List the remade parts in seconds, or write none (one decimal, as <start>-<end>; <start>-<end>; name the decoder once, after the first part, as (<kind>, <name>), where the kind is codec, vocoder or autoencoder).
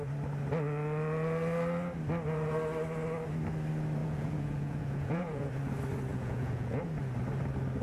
4.0-5.5 (vocoder, Vocos); 6.1-6.8